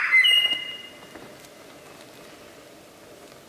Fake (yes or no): no